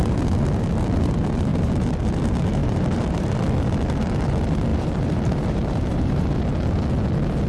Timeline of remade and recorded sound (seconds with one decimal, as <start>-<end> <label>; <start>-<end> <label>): 0.0-1.5 recorded; 1.5-2.0 remade; 2.0-2.6 recorded; 2.6-3.4 remade; 3.4-4.7 recorded; 4.7-6.5 remade; 6.5-7.5 recorded